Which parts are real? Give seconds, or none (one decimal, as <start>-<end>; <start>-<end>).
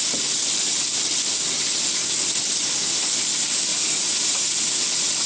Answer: 0.0-3.7; 4.7-5.3